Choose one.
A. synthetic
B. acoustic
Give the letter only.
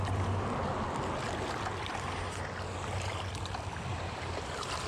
B